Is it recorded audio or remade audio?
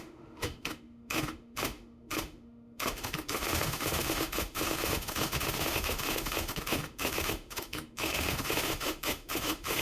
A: remade